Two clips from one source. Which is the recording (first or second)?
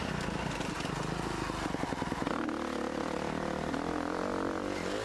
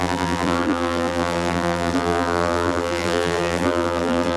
first